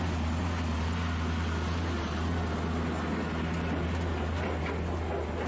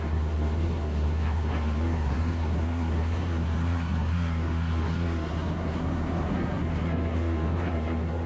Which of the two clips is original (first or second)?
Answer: first